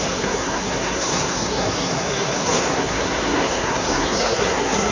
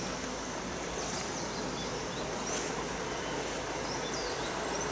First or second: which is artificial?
first